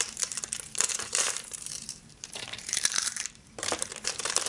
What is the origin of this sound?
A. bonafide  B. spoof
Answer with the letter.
B